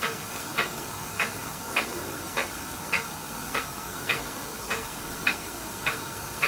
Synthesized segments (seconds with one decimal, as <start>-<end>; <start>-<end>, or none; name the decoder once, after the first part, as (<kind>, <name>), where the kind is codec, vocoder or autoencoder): 0.0-6.5 (codec, SNAC)